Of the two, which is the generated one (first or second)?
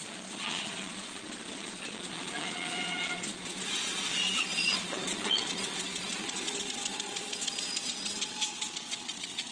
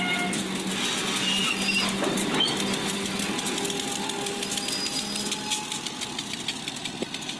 first